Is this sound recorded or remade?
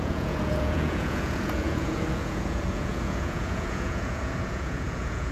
remade